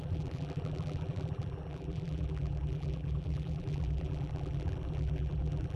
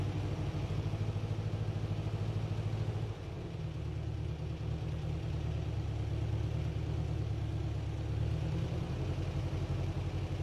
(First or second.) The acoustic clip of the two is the second